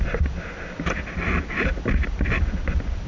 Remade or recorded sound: recorded